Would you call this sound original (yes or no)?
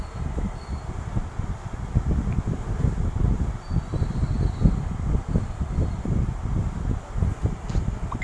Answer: yes